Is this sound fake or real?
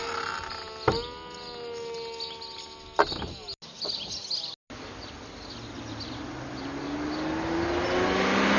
real